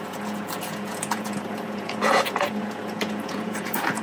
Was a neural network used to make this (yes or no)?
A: yes